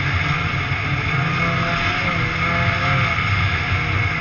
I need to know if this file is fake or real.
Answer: real